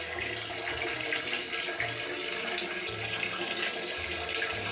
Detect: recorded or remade recorded